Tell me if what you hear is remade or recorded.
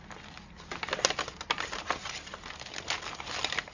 recorded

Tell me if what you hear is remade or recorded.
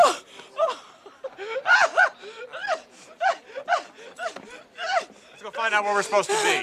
remade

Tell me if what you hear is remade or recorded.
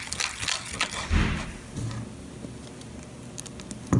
recorded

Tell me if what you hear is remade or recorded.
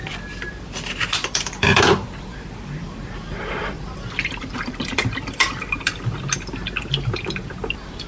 remade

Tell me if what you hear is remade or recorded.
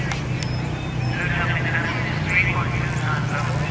recorded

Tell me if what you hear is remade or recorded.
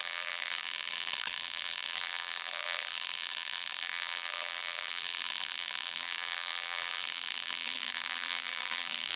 remade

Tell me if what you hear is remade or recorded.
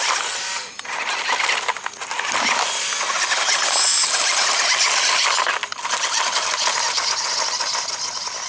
recorded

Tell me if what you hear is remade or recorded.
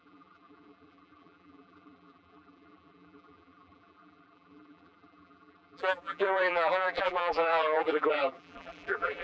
remade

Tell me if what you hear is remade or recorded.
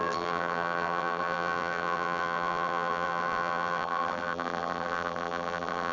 remade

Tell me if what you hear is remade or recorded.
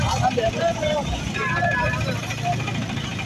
remade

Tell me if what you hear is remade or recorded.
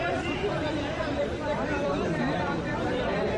remade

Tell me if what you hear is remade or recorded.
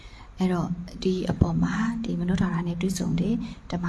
remade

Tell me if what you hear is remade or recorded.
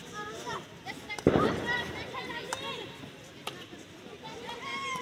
remade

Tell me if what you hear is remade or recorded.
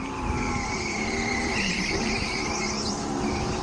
remade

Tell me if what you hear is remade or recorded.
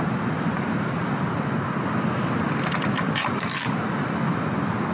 recorded